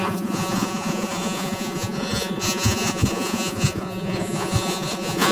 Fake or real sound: fake